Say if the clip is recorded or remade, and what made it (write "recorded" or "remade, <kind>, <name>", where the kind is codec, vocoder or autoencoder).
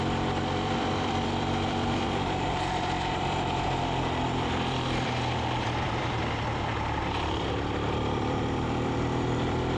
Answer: remade, vocoder, BigVGAN v2